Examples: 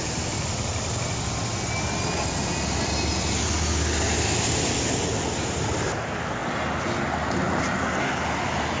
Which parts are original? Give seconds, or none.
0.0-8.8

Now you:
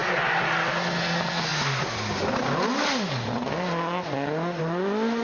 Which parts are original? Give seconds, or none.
0.0-5.2

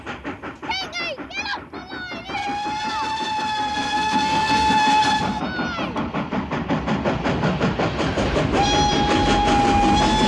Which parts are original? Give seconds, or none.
0.0-3.5; 5.0-10.3

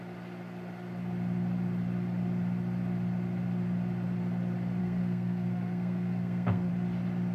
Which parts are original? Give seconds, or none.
0.0-4.8; 6.7-7.3

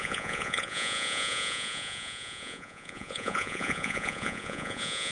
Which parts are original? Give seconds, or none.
none

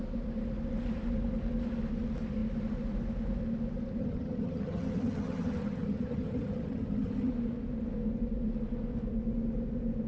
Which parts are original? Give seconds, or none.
0.0-4.0; 7.3-10.1

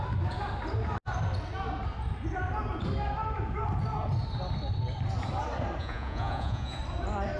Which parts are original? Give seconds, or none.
0.0-5.8; 6.8-7.4